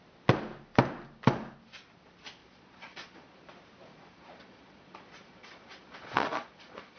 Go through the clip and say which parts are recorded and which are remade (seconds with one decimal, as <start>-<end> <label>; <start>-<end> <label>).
0.0-2.4 recorded; 2.4-3.4 remade; 3.4-3.9 recorded; 3.9-7.0 remade